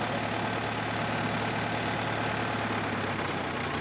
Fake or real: real